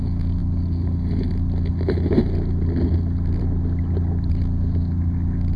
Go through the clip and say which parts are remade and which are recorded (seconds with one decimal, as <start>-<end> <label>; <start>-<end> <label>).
0.0-5.6 recorded